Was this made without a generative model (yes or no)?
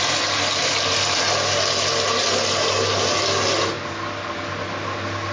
yes